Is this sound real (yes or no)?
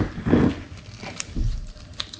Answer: yes